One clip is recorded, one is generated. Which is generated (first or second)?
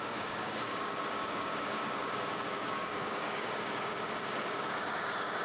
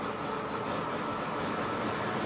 first